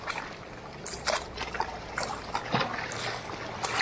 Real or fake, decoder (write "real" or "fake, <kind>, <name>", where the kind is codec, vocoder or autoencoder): real